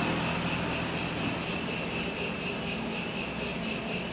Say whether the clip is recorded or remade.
recorded